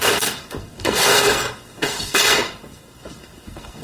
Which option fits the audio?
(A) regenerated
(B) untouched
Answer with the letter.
A